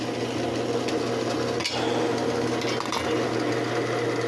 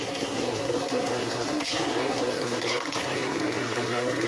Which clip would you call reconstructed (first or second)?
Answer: second